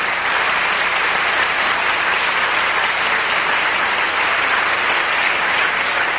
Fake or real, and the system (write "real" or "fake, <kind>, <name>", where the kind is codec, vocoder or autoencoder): fake, vocoder, BigVGAN v2